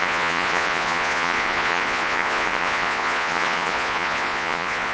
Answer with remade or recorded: remade